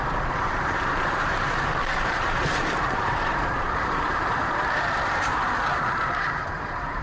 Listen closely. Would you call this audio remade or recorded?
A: remade